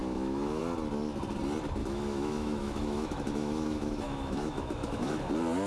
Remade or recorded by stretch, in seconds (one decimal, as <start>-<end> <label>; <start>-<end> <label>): 0.0-0.6 remade; 0.6-1.8 recorded; 1.8-5.2 remade; 5.2-5.7 recorded